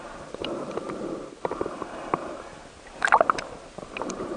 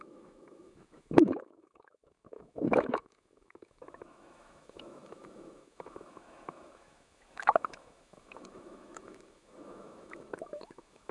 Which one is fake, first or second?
second